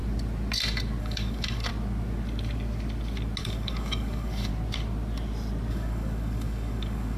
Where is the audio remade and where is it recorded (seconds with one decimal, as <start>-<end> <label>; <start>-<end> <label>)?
0.0-1.0 recorded; 1.0-1.7 remade; 1.7-3.4 recorded; 3.4-4.5 remade; 4.5-5.7 recorded; 5.7-7.2 remade